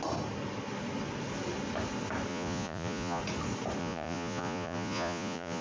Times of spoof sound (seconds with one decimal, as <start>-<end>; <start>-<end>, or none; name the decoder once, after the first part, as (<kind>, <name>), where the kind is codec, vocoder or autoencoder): 2.3-3.2 (vocoder, Vocos); 3.8-5.6